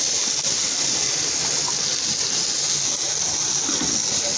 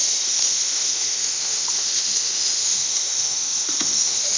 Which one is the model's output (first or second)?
second